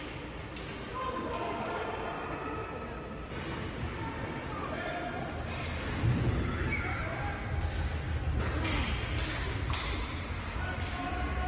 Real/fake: real